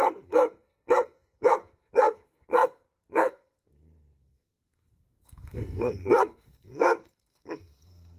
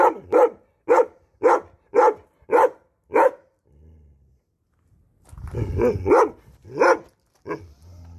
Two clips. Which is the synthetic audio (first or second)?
first